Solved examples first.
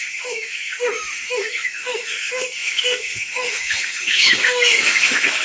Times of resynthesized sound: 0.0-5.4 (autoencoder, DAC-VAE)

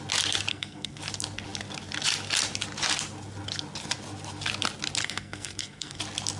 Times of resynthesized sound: 0.5-1.0 (codec, SNAC); 5.0-6.0

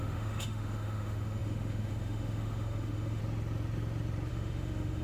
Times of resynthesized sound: 0.0-3.2 (autoencoder, DAC-VAE); 4.3-5.0

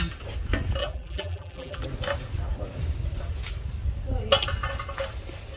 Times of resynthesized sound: 0.8-1.8 (vocoder, BigVGAN v2)

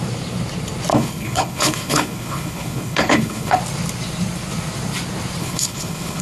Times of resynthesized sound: 0.9-3.6 (codec, HILCodec); 5.4-6.2

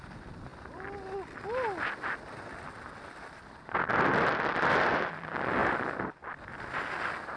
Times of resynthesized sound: none